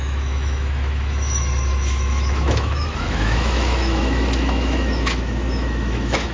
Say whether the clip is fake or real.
fake